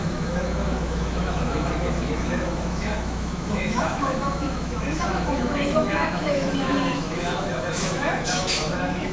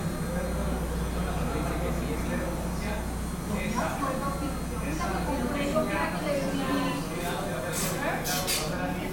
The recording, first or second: second